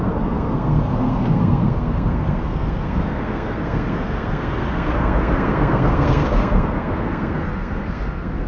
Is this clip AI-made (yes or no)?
yes